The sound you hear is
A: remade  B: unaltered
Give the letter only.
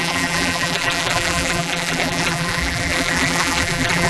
A